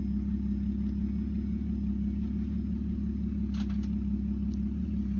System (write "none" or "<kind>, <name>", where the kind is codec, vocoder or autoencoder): none